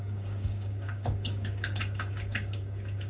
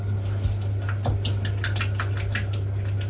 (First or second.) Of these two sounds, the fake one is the first